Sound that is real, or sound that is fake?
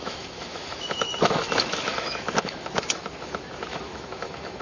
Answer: fake